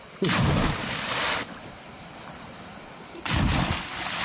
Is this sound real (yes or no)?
yes